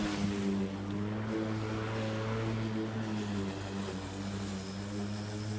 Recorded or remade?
recorded